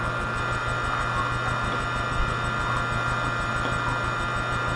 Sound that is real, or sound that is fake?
fake